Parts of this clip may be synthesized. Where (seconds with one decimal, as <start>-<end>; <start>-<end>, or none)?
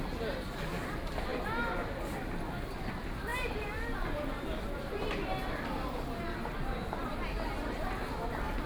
none